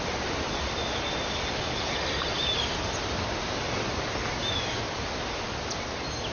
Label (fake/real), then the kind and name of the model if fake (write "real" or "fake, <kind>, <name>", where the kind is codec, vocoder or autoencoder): real